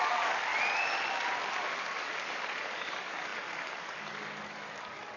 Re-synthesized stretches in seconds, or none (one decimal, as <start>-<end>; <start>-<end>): 0.0-0.5; 1.8-5.2